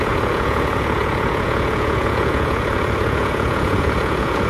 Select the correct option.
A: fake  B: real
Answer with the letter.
A